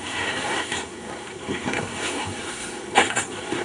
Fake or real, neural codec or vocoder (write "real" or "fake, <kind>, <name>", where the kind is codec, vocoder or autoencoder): fake, codec, SNAC